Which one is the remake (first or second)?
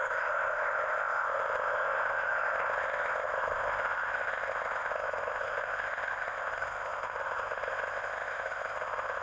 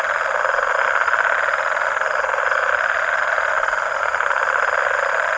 first